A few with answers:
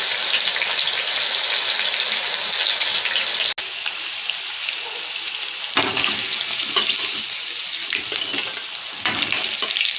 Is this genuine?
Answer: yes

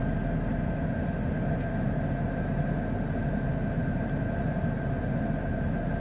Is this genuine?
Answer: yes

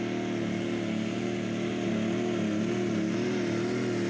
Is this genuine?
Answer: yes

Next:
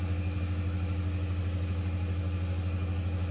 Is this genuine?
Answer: yes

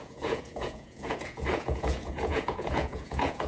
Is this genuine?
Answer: no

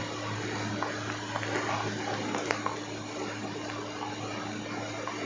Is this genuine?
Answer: yes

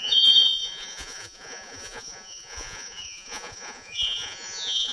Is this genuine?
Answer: no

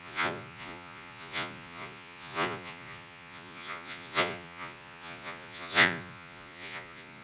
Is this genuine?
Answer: no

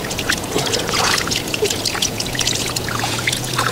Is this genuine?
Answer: no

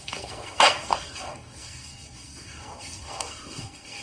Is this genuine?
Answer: no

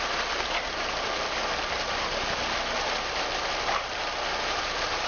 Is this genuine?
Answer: yes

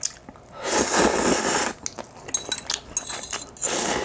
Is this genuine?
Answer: yes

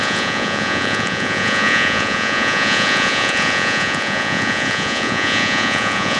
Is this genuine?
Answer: no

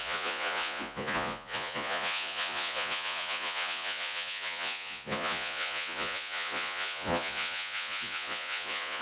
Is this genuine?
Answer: no